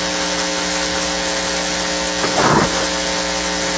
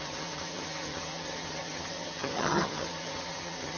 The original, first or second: first